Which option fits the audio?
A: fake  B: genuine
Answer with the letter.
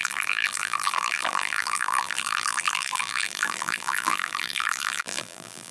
A